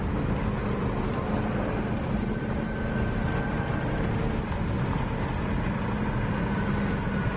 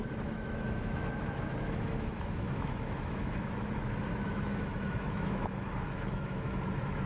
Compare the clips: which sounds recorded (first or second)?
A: first